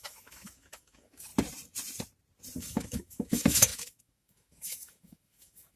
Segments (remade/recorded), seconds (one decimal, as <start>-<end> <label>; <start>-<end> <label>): 0.0-1.3 remade; 1.3-2.6 recorded; 2.6-5.8 remade